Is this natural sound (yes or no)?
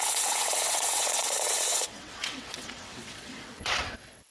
no